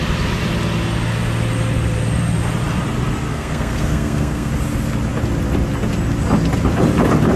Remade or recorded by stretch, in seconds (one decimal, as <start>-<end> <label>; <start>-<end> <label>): 0.0-3.3 recorded; 3.3-4.5 remade; 4.5-7.4 recorded